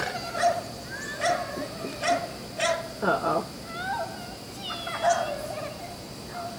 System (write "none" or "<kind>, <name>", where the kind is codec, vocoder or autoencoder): none